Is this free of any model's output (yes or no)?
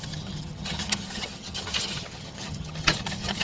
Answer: no